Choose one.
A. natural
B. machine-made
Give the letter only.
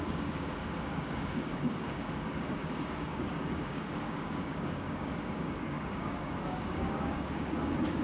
B